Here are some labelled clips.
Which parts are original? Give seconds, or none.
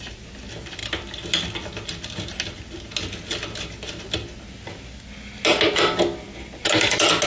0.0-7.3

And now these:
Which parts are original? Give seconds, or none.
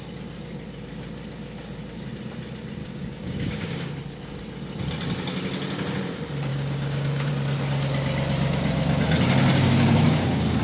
0.0-2.8; 3.9-6.5; 7.3-9.5